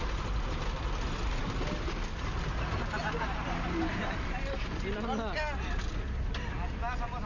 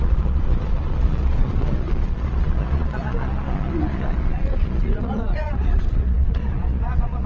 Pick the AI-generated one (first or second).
second